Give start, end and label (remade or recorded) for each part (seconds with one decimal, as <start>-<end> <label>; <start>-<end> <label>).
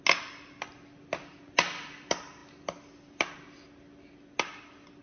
0.0-5.0 recorded